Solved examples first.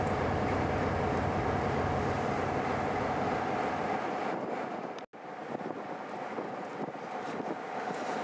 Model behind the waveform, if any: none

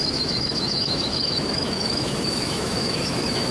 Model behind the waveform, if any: autoencoder, DAC-VAE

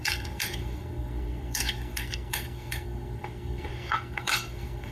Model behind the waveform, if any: codec, SNAC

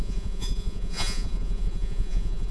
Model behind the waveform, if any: vocoder, Vocos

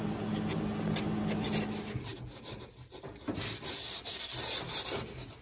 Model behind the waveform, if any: none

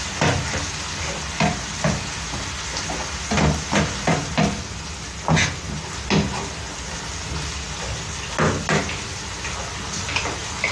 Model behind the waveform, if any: none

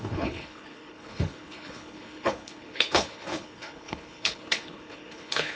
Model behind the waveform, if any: codec, HILCodec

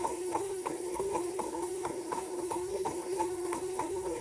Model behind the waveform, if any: codec, SNAC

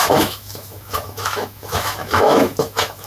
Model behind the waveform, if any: autoencoder, DAC-VAE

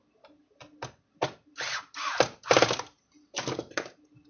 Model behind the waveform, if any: none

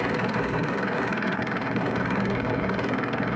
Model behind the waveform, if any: codec, SNAC